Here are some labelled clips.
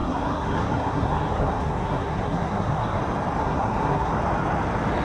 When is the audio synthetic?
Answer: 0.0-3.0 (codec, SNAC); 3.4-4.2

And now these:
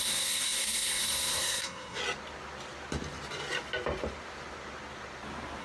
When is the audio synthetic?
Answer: 0.0-2.0 (codec, SNAC)

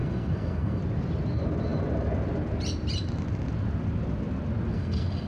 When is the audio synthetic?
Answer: 0.0-0.8 (codec, SNAC); 4.7-5.3

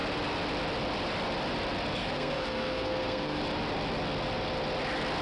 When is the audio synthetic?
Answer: 2.0-3.4 (codec, SNAC)

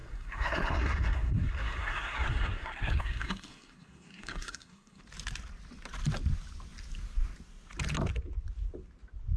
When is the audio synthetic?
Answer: 0.0-5.0 (codec, SNAC)

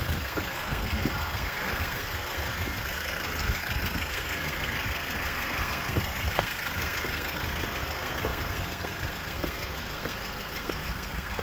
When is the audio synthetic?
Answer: 0.0-11.4 (codec, SNAC)

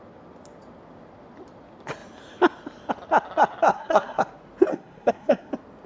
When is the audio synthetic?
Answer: 3.7-4.2 (codec, SNAC); 4.7-5.5